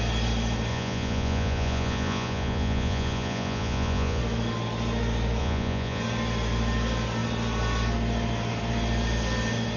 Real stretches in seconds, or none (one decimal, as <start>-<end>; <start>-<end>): 0.0-0.7; 4.2-5.4; 6.0-9.8